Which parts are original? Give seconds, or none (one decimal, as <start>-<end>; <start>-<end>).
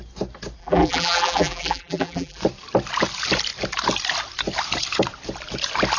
0.0-0.6; 2.4-6.0